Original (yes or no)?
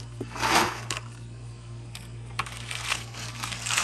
no